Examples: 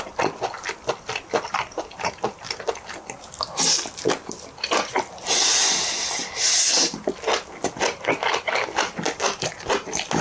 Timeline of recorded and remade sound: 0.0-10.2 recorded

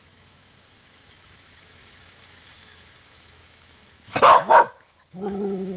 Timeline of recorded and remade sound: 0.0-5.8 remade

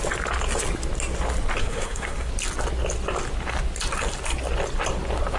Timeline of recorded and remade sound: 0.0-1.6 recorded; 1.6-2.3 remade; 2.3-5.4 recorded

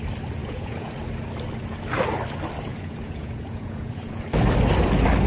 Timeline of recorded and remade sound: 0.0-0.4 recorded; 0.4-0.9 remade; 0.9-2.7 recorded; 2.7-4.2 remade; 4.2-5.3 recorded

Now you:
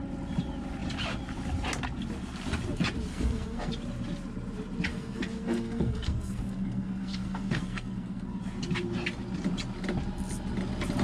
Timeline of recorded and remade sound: 0.0-3.1 recorded; 3.1-3.7 remade; 3.7-4.9 recorded; 4.9-8.4 remade; 8.4-11.0 recorded